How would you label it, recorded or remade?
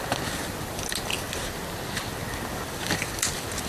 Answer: recorded